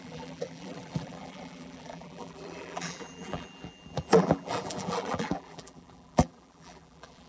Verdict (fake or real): fake